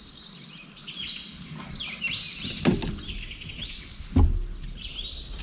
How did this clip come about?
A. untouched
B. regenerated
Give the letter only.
A